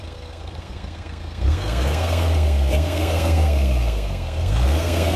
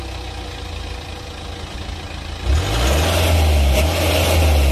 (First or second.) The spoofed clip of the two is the first